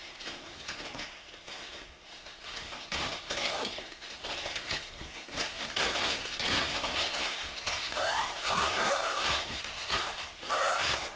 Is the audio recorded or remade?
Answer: remade